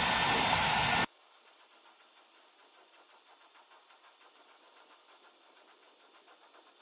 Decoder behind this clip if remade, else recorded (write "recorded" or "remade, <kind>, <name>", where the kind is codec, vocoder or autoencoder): recorded